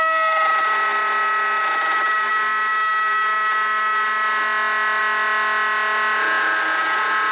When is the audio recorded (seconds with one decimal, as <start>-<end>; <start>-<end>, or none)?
0.0-7.3